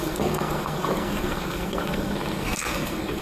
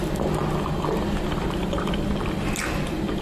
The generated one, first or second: first